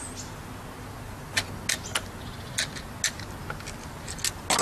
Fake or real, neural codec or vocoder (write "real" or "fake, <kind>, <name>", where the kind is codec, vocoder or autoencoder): real